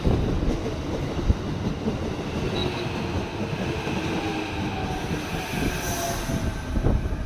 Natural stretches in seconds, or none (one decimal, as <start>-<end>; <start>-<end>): 0.0-7.3